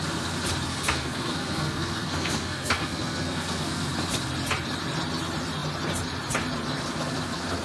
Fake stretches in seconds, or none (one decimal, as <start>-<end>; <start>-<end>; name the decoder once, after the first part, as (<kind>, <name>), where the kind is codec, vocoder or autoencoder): 0.7-3.9 (codec, SNAC)